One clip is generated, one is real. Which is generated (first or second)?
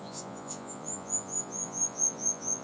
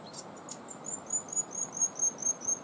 first